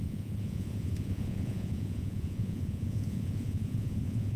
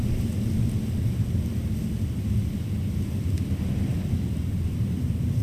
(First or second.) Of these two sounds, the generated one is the first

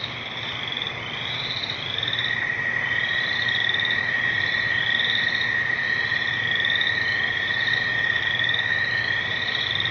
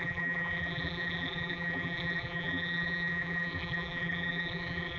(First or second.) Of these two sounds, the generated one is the second